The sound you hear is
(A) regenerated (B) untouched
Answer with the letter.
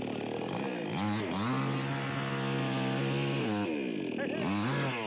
B